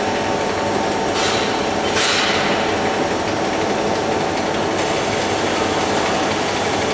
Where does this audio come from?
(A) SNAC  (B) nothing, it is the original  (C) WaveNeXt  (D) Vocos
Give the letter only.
B